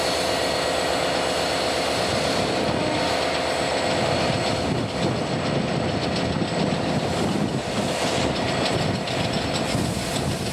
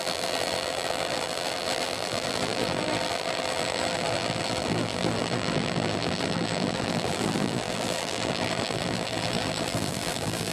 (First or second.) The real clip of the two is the first